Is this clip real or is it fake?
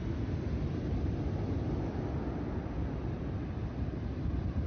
real